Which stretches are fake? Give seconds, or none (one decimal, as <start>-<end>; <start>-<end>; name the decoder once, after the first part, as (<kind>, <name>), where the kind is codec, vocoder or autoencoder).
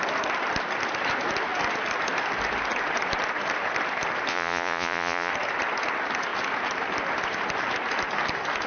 4.3-5.3 (vocoder, Vocos)